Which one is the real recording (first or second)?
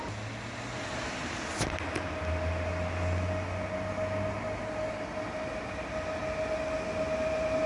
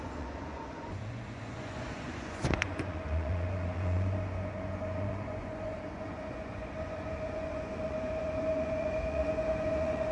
first